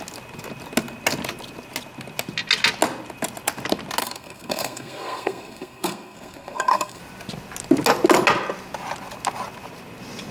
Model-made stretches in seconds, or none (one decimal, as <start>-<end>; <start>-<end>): 4.0-7.0